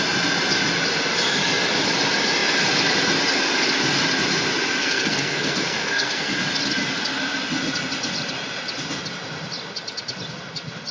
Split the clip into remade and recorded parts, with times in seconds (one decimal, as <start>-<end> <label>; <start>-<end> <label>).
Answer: 0.0-4.8 recorded; 4.8-6.3 remade; 6.3-10.9 recorded

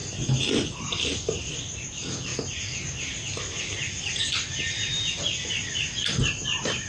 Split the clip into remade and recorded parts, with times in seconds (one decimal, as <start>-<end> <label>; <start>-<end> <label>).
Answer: 0.0-6.9 recorded

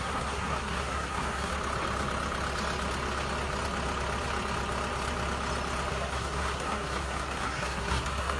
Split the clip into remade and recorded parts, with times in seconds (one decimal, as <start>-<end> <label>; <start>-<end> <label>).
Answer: 0.0-1.5 remade; 1.5-5.9 recorded; 5.9-8.4 remade

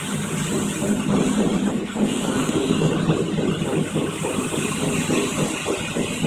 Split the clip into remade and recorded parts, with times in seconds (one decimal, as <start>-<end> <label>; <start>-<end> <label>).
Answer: 0.0-1.7 recorded; 1.7-2.9 remade; 2.9-6.3 recorded

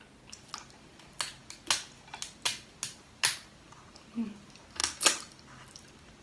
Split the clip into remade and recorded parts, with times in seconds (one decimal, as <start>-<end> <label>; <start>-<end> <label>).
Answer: 0.0-6.2 recorded